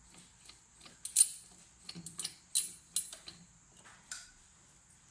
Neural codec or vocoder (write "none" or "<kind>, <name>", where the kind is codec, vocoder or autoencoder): none